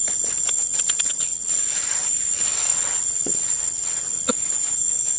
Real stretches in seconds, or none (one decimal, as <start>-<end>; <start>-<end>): 0.0-0.6; 1.6-2.7; 4.3-5.2